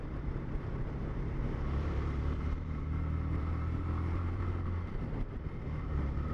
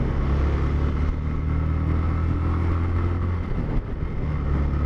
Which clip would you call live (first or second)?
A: second